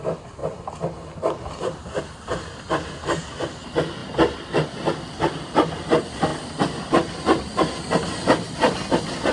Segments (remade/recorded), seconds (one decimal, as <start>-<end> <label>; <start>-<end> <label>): 0.0-9.3 recorded